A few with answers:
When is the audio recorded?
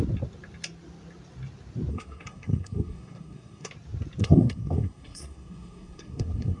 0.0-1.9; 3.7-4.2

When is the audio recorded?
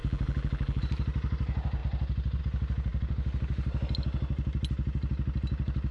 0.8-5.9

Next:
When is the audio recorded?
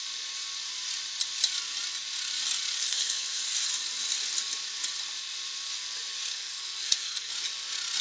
0.0-2.8; 3.4-6.3; 7.3-8.0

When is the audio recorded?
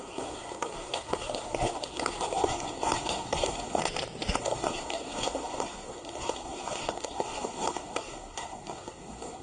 3.8-4.4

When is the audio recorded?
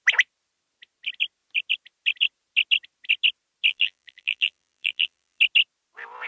0.0-3.7; 5.4-6.3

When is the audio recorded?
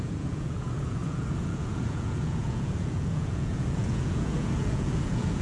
none